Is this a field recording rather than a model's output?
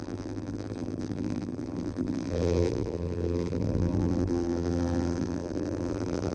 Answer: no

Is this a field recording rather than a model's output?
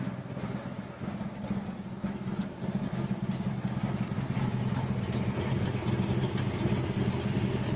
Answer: yes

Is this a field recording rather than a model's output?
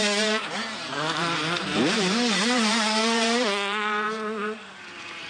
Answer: no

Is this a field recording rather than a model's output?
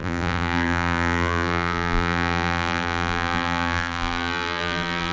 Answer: no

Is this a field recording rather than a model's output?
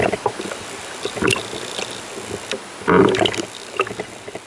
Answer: yes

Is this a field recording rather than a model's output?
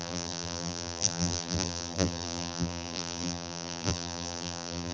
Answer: no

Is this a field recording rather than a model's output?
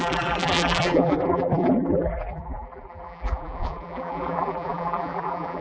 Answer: no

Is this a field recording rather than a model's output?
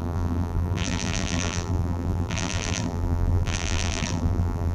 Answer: no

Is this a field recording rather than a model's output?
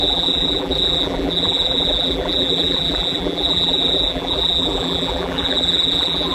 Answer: no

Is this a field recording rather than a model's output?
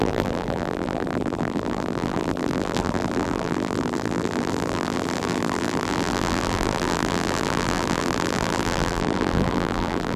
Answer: no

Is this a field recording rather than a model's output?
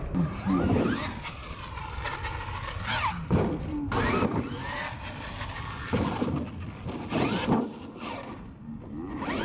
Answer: yes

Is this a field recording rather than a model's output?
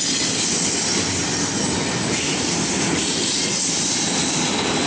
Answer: no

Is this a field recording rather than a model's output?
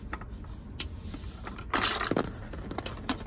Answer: yes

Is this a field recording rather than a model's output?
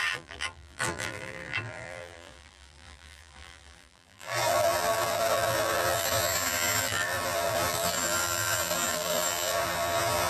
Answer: no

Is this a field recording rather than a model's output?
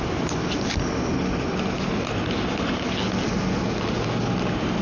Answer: yes